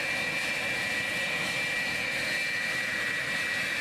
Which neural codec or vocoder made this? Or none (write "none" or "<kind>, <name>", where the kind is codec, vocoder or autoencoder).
none